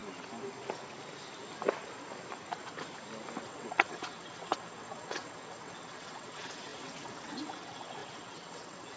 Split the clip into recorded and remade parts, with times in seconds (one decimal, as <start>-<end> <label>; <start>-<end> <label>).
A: 0.0-3.4 recorded; 3.4-9.0 remade